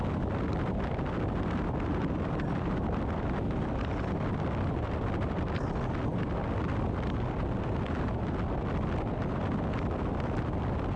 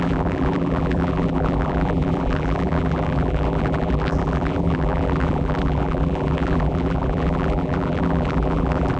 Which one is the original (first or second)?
first